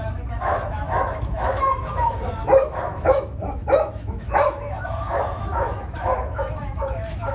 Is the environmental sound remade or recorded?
remade